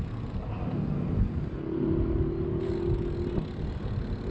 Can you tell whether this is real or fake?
real